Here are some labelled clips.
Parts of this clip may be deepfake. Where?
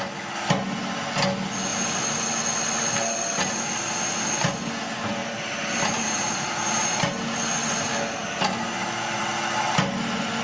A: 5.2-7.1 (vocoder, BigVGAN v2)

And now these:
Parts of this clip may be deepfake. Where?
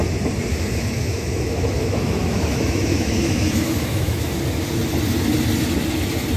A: 0.5-4.3 (autoencoder, DAC-VAE)